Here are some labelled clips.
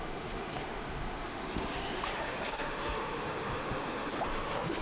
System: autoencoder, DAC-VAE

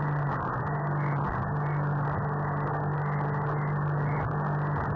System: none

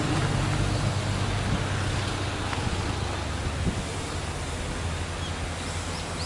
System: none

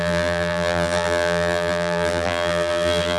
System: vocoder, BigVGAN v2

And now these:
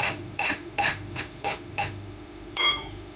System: autoencoder, DAC-VAE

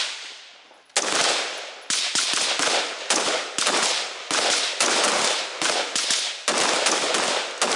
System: none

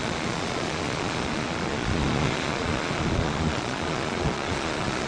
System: vocoder, Vocos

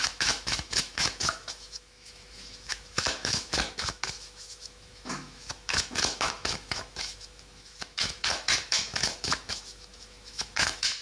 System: autoencoder, DAC-VAE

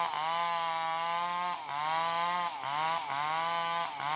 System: none